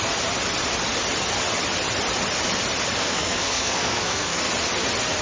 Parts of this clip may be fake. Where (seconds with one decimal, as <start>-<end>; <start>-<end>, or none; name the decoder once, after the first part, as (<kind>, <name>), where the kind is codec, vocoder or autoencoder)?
3.0-4.4 (codec, SNAC)